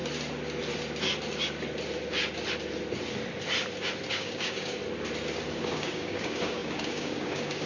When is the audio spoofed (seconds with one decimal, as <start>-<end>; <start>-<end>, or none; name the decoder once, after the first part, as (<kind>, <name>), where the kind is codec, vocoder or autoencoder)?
4.1-4.8 (codec, DAC); 5.6-7.7